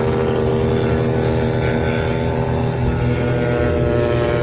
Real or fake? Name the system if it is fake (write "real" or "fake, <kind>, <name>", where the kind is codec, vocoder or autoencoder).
real